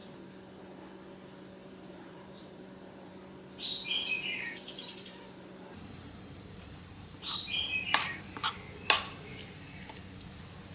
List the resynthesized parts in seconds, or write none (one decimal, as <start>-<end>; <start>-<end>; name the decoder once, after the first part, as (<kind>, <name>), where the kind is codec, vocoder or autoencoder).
1.6-3.1 (vocoder, BigVGAN v2); 3.8-8.5